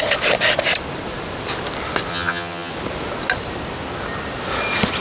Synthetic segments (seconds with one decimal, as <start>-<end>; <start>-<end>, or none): 2.1-2.7